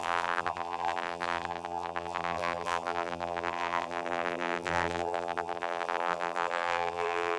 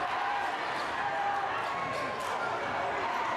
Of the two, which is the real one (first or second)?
second